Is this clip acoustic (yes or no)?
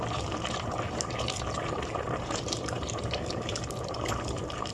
no